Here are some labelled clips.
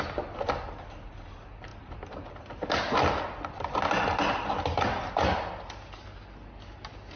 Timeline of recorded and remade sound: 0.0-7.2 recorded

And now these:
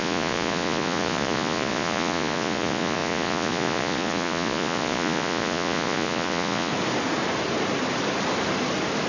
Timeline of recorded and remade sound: 0.0-6.7 remade; 6.7-9.1 recorded

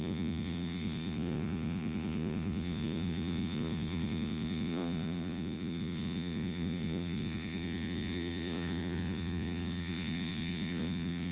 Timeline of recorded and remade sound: 0.0-11.3 remade

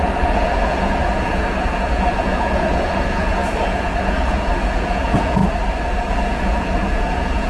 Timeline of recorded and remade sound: 0.0-5.4 remade; 5.4-6.1 recorded; 6.1-7.5 remade